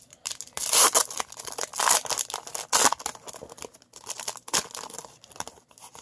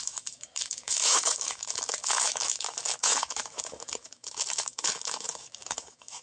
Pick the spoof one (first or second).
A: second